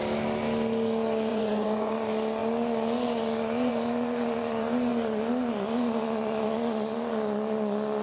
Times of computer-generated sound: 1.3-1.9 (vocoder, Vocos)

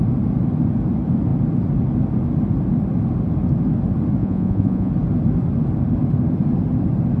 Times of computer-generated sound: 4.2-4.9 (vocoder, Vocos)

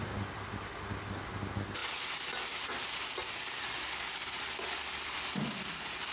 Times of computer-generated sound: none

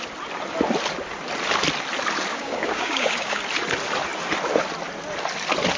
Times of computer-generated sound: 2.3-3.4 (codec, DAC)

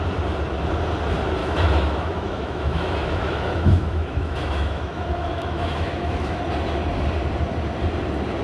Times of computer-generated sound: 1.4-6.4 (autoencoder, DAC-VAE)

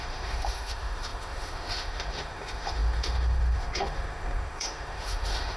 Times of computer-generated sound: 0.0-5.6 (autoencoder, DAC-VAE)

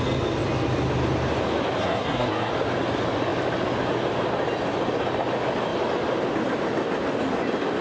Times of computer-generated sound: 1.8-2.5 (codec, SNAC)